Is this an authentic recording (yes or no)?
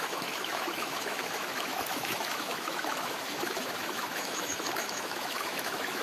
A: no